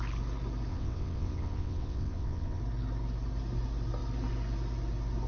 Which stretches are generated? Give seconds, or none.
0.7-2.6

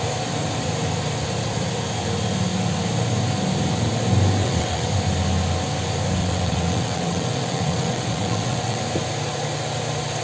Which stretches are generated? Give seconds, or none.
4.4-4.9; 6.2-8.8

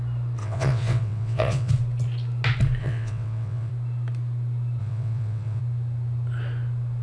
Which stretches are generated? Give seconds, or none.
0.4-1.7; 2.8-3.7; 4.8-5.6

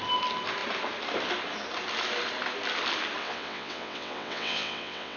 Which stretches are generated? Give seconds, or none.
3.2-5.2

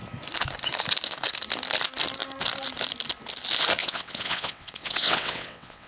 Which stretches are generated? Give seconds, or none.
3.8-5.9

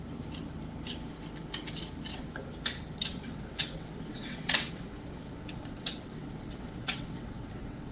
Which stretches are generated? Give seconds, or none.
3.1-7.9

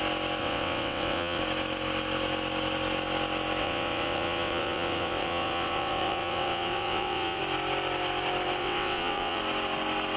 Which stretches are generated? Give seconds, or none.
0.4-1.4; 3.6-7.4; 8.6-9.4

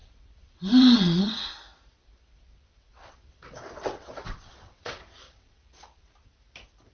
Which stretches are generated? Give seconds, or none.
0.0-1.5; 2.0-6.1